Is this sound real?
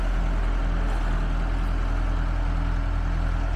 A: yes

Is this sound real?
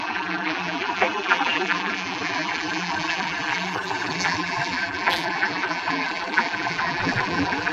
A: no